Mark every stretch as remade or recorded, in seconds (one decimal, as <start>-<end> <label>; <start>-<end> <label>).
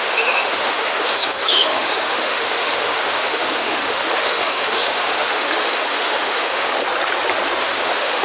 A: 0.0-6.8 remade; 6.8-7.6 recorded; 7.6-8.2 remade